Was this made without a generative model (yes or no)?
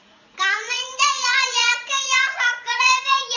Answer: no